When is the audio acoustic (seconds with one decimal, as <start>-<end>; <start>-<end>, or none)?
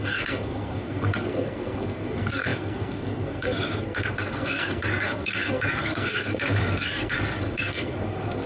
none